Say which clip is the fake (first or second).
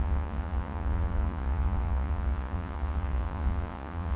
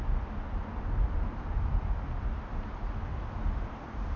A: first